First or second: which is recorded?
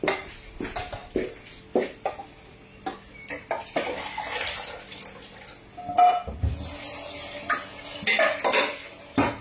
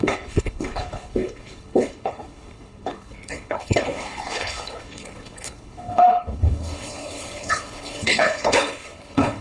first